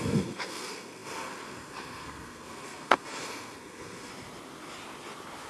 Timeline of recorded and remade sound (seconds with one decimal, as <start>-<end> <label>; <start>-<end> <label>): 0.0-4.1 remade; 4.1-5.5 recorded